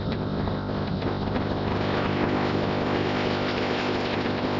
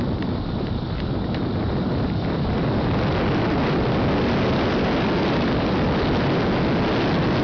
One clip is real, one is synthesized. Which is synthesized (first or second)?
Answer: first